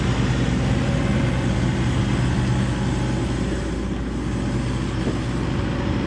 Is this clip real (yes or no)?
yes